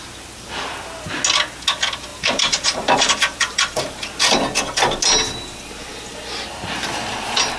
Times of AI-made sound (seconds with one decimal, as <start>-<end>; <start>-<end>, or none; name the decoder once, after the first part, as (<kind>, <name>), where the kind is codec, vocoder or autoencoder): 2.1-4.1 (vocoder, BigVGAN v2)